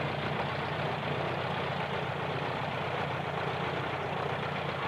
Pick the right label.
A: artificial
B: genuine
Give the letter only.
B